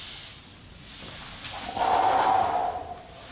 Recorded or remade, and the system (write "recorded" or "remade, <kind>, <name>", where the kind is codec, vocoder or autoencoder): recorded